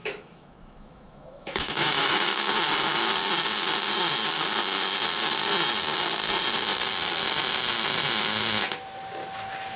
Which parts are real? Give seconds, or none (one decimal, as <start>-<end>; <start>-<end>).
2.5-9.8